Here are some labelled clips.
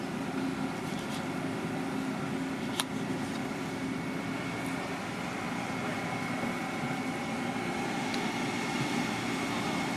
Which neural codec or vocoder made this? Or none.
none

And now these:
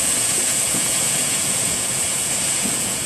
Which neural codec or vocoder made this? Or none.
vocoder, Vocos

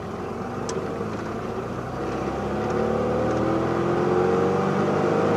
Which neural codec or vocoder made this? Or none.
none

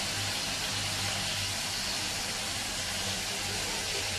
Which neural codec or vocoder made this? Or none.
none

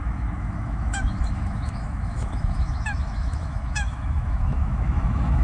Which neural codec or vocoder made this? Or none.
autoencoder, DAC-VAE